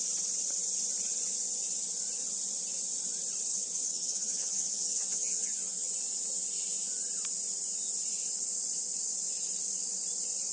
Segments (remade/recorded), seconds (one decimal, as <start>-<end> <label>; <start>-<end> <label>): 0.0-3.5 recorded; 3.5-5.9 remade; 5.9-10.5 recorded